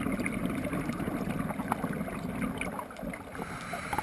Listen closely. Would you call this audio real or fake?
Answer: real